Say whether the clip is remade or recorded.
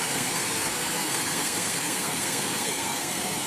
remade